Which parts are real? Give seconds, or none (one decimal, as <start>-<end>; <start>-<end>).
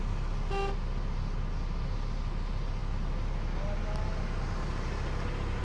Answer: 0.0-5.6